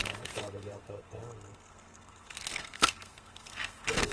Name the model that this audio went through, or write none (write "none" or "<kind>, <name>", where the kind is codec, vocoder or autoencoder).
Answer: codec, SNAC